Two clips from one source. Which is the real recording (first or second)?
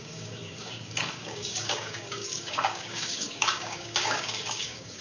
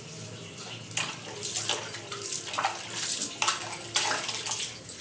second